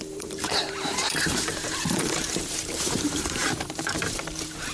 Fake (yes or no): yes